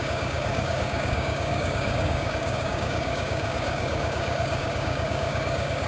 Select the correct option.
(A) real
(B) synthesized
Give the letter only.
B